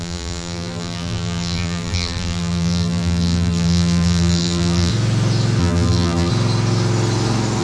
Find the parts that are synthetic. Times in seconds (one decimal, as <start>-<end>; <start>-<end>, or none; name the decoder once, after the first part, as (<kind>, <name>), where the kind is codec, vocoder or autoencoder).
0.0-4.9 (vocoder, BigVGAN v2); 5.6-6.3